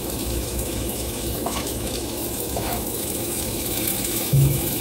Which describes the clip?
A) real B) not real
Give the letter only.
B